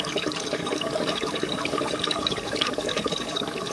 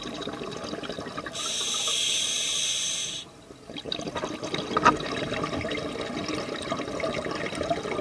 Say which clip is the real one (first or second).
second